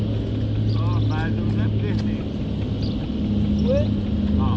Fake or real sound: real